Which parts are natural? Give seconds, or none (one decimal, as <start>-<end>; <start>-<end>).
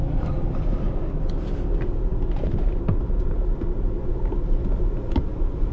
0.0-5.7